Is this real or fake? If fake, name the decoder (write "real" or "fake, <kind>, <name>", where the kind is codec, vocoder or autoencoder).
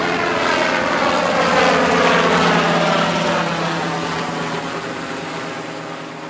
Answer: real